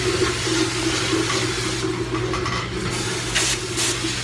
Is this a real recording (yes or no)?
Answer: yes